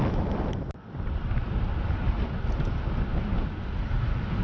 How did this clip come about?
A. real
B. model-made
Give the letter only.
A